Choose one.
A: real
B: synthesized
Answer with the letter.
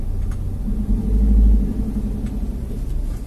A